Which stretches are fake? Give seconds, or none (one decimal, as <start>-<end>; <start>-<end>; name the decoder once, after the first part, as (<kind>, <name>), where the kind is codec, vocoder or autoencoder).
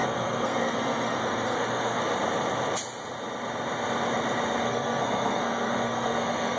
0.0-2.0 (codec, SNAC); 4.6-6.6